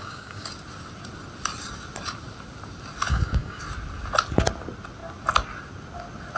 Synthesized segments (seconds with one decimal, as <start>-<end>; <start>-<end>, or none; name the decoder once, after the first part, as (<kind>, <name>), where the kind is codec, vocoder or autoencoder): 0.0-0.5 (codec, DAC); 3.1-3.6